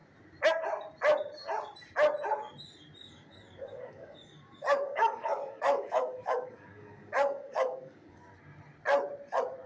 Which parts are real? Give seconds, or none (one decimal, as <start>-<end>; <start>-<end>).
0.0-3.0; 8.2-9.7